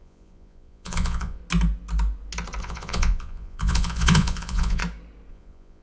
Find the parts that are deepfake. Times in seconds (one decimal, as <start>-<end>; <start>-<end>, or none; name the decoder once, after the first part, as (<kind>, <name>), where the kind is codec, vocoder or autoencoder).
0.0-1.4 (vocoder, Vocos); 2.6-4.8; 5.3-5.8